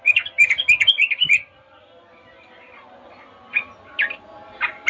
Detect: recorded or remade remade